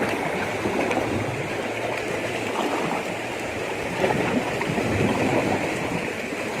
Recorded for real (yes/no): yes